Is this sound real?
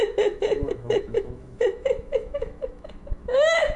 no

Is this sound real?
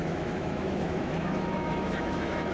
no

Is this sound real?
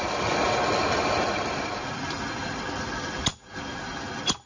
yes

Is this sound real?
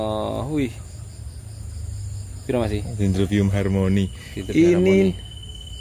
yes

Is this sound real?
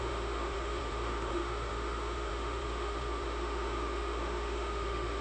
no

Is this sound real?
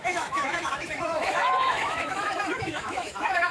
no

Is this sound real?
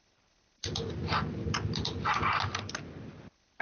yes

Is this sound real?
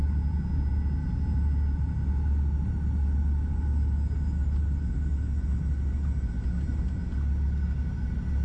yes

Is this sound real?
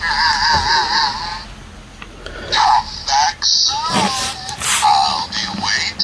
yes